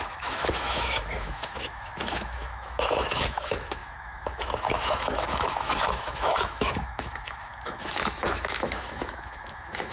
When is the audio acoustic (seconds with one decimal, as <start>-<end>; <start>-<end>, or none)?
none